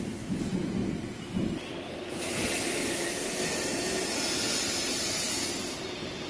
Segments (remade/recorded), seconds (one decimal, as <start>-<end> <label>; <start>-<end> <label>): 0.0-2.8 recorded; 2.8-6.3 remade